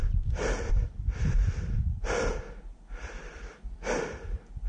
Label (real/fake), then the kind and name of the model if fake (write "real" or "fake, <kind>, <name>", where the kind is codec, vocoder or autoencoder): real